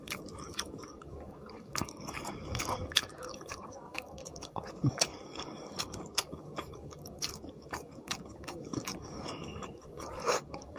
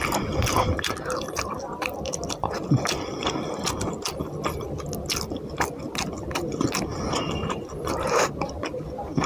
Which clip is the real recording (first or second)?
second